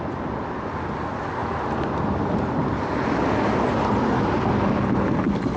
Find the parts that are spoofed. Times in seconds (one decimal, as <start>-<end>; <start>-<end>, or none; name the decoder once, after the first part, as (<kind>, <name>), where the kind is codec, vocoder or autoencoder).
1.4-3.6 (vocoder, BigVGAN v2)